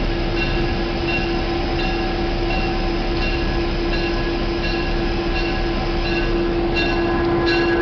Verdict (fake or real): real